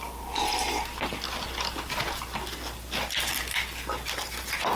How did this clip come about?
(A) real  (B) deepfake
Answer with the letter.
A